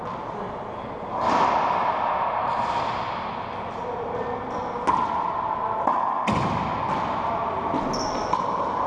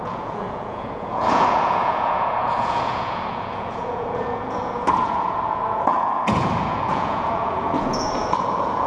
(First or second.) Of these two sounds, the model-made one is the second